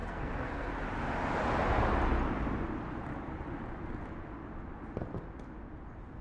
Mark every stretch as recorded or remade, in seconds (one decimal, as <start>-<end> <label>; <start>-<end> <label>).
0.0-0.7 remade; 0.7-6.2 recorded